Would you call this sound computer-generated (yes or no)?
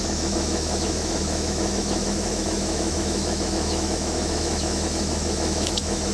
yes